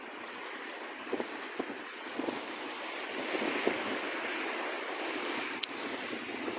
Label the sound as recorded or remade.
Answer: recorded